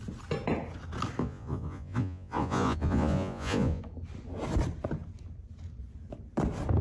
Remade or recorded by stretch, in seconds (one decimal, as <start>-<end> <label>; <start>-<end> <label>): 0.0-1.2 recorded; 1.2-3.8 remade; 3.8-6.8 recorded